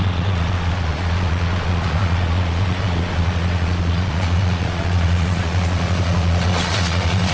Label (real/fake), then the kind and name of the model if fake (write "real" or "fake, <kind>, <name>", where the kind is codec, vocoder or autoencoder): fake, vocoder, Vocos